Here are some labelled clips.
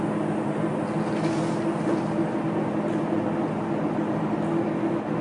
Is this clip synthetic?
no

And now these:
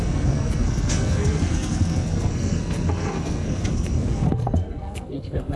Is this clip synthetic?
yes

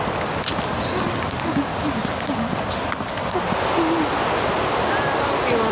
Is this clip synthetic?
no